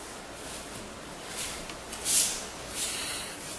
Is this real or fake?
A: real